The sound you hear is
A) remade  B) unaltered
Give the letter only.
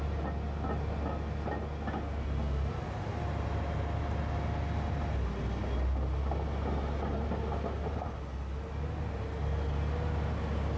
B